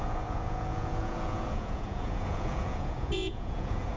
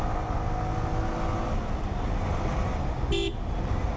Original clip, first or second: second